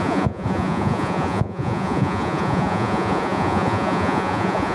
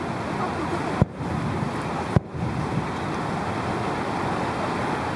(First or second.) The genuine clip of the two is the second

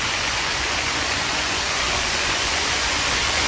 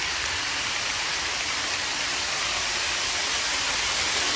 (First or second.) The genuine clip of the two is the second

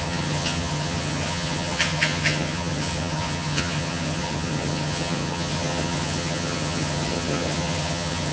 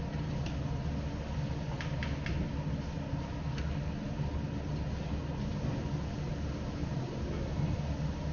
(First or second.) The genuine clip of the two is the second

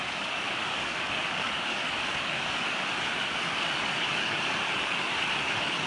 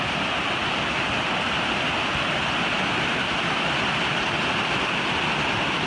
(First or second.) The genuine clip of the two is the second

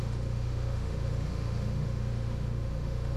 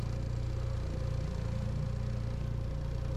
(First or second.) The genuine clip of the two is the second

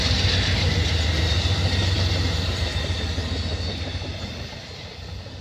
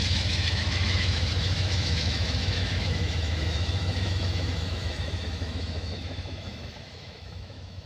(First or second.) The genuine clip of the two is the first